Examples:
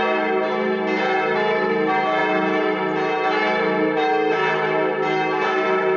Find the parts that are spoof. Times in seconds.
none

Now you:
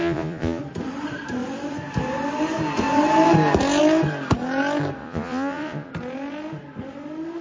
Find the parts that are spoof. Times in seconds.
0.0-0.6 (vocoder, Vocos); 5.0-5.9

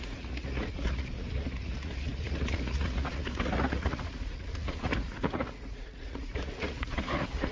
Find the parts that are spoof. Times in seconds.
0.0-7.5 (vocoder, Vocos)